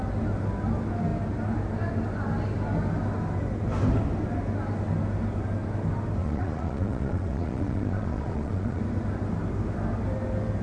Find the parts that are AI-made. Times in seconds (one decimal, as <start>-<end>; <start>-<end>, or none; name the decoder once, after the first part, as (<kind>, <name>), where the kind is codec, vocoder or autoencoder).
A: 6.2-8.8 (vocoder, Vocos)

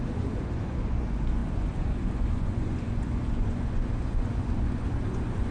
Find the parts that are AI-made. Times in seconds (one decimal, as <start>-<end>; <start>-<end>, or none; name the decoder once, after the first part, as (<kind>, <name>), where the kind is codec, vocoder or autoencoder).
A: 0.0-5.5 (vocoder, Vocos)

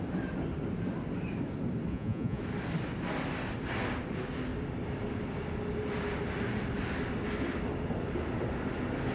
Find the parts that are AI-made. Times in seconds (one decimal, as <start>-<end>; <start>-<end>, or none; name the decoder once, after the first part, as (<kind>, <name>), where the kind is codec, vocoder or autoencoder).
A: 1.9-2.4 (vocoder, Vocos)

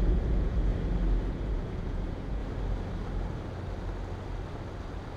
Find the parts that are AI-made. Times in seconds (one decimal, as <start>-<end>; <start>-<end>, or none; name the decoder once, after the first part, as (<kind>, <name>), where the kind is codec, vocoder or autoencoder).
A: 0.0-0.7 (vocoder, Vocos); 1.3-2.4

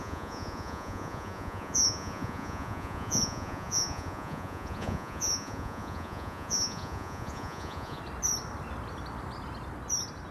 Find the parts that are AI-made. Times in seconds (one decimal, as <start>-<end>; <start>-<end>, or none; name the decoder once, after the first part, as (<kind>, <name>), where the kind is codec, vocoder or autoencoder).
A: 0.0-8.0 (vocoder, Vocos)